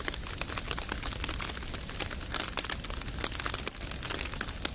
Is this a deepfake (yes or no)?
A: no